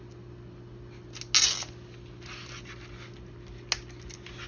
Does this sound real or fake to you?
real